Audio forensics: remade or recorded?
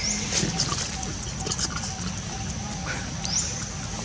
recorded